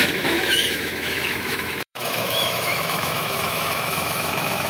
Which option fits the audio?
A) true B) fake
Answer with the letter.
B